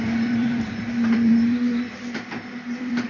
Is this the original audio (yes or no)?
no